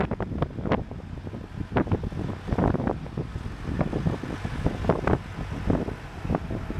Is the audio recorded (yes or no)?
yes